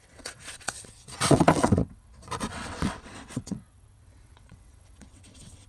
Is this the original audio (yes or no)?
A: no